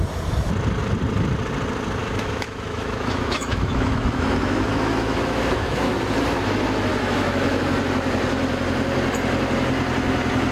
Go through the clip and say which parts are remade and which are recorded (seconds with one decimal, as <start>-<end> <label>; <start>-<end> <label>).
0.0-2.0 recorded; 2.0-5.9 remade; 5.9-6.9 recorded; 6.9-7.8 remade; 7.8-10.5 recorded

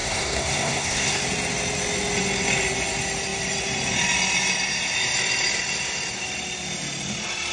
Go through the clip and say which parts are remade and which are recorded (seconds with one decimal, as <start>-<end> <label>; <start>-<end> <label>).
0.0-1.2 remade; 1.2-7.5 recorded

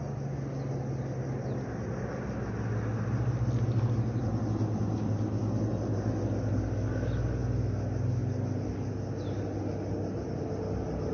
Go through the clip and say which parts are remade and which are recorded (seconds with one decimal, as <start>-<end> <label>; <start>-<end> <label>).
0.0-11.1 recorded

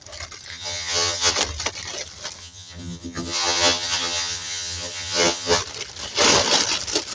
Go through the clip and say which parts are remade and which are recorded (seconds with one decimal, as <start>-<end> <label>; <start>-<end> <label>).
0.0-0.5 recorded; 0.5-1.3 remade; 1.3-2.4 recorded; 2.4-5.6 remade; 5.6-7.1 recorded

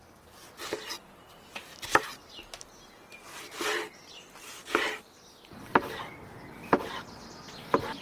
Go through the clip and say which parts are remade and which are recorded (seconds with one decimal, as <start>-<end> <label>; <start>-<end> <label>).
0.0-6.6 recorded; 6.6-7.3 remade; 7.3-8.0 recorded